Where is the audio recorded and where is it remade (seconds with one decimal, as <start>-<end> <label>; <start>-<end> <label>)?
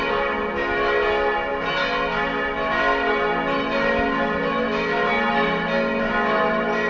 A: 0.0-6.9 recorded